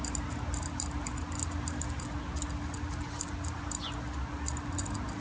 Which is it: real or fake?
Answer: real